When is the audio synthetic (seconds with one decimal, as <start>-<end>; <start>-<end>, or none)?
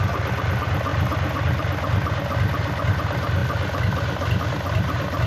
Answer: none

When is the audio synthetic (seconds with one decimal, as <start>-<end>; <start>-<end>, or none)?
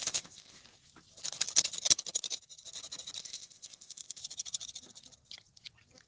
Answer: 0.0-0.6; 3.2-4.2